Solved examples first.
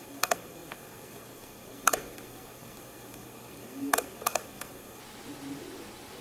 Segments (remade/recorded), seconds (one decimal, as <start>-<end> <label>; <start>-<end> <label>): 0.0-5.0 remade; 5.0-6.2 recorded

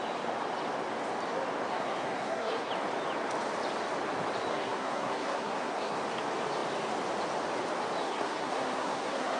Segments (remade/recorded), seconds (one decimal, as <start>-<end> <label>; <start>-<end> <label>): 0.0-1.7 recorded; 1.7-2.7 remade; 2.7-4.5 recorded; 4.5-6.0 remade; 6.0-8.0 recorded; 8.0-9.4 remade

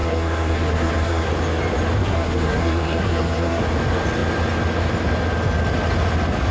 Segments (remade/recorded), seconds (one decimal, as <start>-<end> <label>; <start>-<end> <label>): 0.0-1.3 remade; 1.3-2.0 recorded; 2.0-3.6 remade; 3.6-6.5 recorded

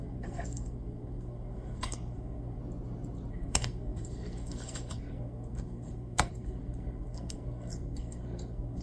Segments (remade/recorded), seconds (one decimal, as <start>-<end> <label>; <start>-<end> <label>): 0.0-2.6 remade; 2.6-3.3 recorded; 3.3-8.8 remade